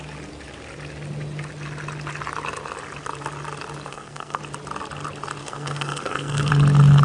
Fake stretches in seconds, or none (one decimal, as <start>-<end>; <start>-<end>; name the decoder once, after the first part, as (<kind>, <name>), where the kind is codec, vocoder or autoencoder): 3.9-4.4 (codec, SNAC); 5.4-6.5